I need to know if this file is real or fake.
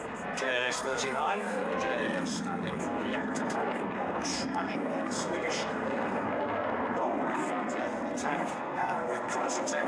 fake